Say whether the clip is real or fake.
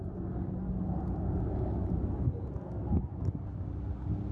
real